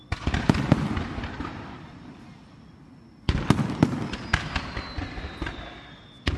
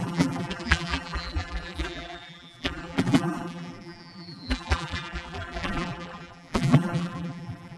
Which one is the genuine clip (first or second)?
first